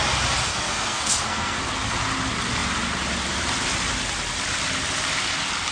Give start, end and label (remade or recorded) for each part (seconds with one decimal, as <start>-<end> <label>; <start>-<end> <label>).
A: 0.0-0.5 recorded; 0.5-1.6 remade; 1.6-5.7 recorded